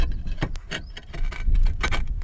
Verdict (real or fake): real